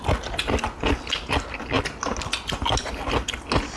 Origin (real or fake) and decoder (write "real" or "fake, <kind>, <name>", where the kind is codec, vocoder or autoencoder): real